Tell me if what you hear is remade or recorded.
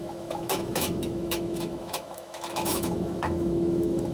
remade